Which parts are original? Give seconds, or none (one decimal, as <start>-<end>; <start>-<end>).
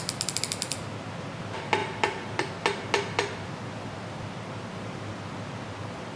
0.0-6.2